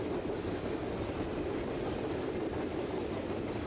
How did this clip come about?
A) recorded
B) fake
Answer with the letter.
A